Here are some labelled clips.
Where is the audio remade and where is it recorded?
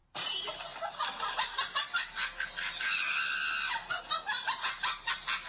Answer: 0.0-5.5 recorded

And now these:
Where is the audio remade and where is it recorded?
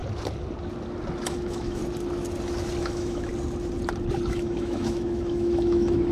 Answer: 0.0-1.3 recorded; 1.3-1.8 remade; 1.8-2.8 recorded; 2.8-3.3 remade; 3.3-4.3 recorded; 4.3-6.1 remade